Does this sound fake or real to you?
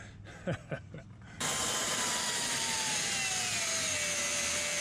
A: real